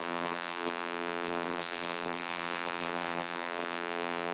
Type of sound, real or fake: fake